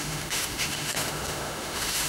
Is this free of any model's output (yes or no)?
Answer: no